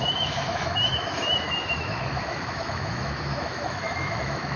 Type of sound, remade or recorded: remade